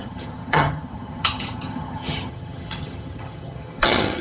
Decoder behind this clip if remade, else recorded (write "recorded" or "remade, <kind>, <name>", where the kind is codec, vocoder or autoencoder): remade, vocoder, HiFi-GAN